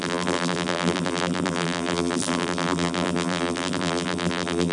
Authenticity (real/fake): fake